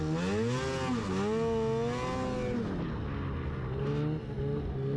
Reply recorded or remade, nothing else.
recorded